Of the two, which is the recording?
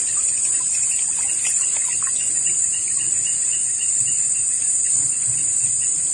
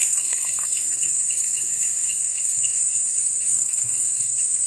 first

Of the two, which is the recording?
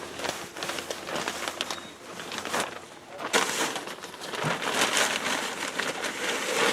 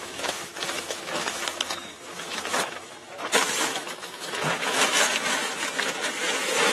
first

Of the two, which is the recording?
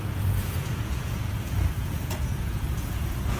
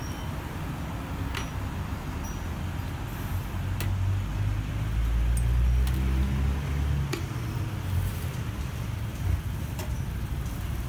second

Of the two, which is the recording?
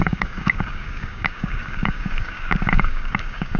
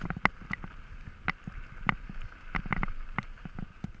second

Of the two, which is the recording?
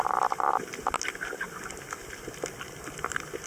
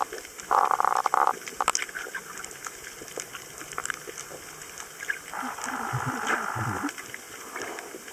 second